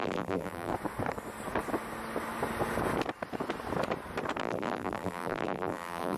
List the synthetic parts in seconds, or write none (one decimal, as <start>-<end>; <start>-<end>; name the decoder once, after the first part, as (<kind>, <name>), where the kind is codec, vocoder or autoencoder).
0.0-0.7 (vocoder, BigVGAN v2); 4.4-6.2